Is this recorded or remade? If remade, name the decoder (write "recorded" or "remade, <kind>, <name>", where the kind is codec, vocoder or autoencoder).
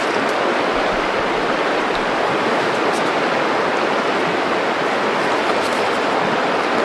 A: recorded